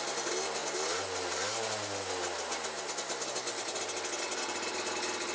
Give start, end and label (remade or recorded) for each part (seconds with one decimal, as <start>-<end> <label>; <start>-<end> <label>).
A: 0.0-5.3 recorded